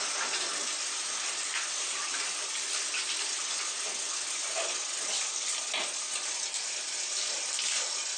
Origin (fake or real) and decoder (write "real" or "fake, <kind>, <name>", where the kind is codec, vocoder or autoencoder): real